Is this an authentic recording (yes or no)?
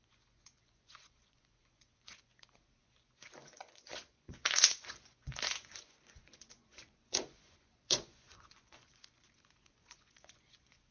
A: no